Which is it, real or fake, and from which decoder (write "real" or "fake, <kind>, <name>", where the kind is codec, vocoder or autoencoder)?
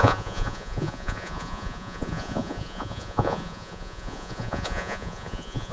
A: fake, vocoder, Vocos